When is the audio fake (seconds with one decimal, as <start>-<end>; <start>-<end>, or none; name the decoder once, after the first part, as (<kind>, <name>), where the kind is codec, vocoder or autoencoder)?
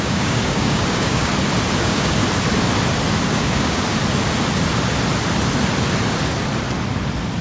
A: 0.0-1.3 (codec, DAC); 1.8-2.2; 3.2-4.0